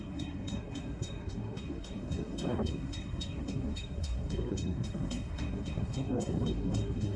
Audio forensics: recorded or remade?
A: remade